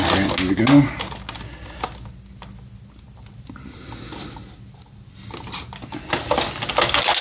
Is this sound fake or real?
real